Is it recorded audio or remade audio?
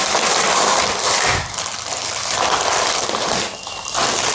remade